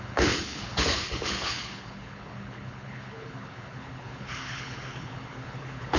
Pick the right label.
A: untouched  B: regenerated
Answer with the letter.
B